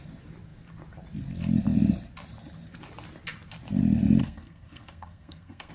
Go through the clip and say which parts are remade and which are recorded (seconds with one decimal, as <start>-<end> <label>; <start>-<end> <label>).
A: 0.0-4.2 recorded; 4.2-5.7 remade